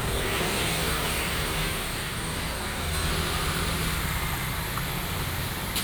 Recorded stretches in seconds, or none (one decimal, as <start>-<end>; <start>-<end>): 3.1-5.8